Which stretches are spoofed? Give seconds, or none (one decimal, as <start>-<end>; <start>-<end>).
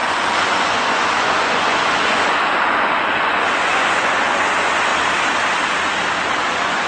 0.0-4.9; 6.4-6.9